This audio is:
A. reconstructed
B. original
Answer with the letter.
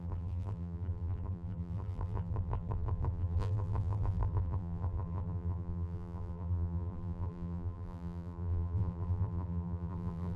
A